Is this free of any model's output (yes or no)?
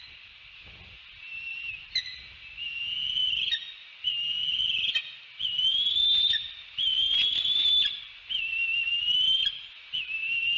yes